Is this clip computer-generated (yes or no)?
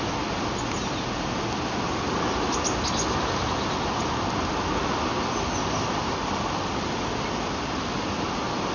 no